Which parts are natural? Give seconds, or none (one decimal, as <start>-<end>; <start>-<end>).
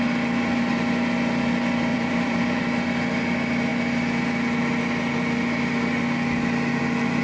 0.0-1.9; 2.6-7.2